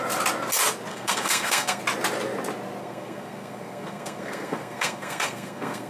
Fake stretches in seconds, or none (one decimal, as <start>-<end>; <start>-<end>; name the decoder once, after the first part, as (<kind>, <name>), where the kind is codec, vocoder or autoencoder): 0.9-1.8 (codec, SNAC); 2.8-5.9